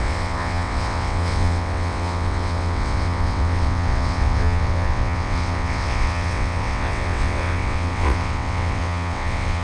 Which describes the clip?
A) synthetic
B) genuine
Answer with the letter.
A